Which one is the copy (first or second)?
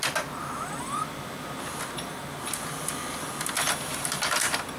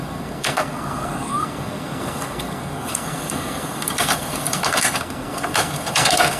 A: second